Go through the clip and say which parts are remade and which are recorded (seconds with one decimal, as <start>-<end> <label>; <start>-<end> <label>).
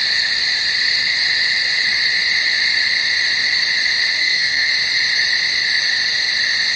0.0-4.2 recorded; 4.2-4.7 remade; 4.7-6.8 recorded